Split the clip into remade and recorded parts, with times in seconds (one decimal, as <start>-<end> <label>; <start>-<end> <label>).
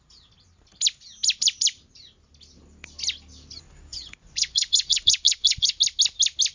0.0-3.9 recorded; 3.9-5.7 remade; 5.7-6.5 recorded